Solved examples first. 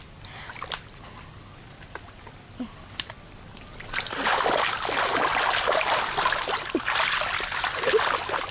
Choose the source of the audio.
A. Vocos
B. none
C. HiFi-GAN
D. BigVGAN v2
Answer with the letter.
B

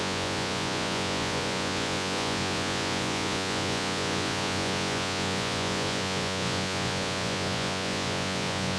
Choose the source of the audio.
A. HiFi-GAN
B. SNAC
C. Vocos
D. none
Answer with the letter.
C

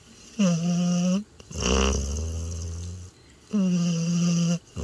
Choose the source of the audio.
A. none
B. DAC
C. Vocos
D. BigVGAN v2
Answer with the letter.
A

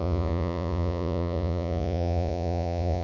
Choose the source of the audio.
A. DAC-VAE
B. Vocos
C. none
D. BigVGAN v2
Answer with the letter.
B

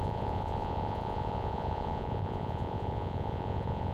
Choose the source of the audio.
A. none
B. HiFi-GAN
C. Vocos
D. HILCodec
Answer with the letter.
C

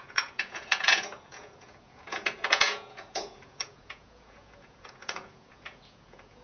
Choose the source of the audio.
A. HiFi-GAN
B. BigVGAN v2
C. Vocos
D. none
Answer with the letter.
C